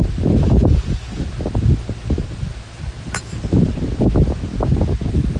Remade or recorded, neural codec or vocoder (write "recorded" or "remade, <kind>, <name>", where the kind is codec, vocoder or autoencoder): recorded